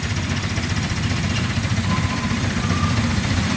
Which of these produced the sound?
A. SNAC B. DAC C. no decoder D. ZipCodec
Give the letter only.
C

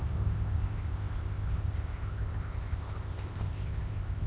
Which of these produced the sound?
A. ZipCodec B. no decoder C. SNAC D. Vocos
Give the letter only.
A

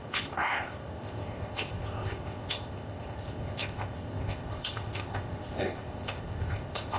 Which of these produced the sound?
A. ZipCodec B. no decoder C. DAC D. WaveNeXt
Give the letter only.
A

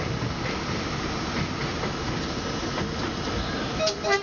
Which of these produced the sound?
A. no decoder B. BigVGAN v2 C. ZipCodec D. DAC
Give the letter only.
A